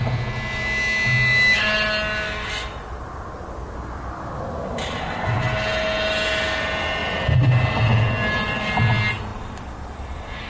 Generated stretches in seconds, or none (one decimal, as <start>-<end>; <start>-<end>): 7.0-7.5; 9.3-10.5